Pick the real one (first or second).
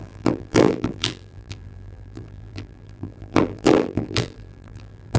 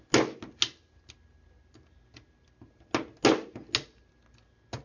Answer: second